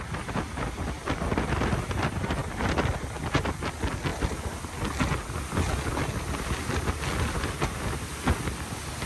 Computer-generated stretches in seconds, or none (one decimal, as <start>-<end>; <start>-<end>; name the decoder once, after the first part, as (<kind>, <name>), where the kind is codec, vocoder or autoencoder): none